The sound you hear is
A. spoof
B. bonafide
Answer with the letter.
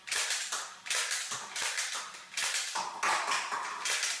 B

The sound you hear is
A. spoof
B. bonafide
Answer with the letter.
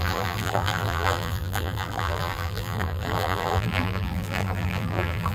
A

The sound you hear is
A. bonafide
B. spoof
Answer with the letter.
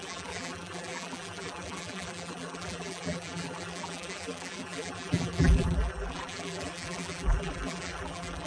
B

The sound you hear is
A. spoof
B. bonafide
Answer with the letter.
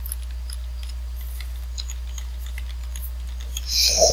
B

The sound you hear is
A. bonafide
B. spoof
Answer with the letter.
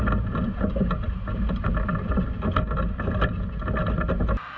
A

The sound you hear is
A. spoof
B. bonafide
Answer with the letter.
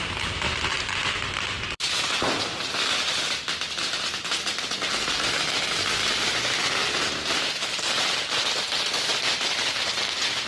A